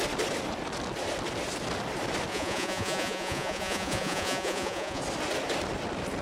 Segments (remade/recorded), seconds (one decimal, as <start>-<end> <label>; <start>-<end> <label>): 0.0-2.3 recorded; 2.3-5.0 remade; 5.0-6.2 recorded